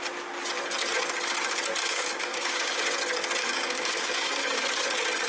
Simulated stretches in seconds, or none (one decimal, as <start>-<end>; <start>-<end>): 1.8-2.8; 3.4-4.6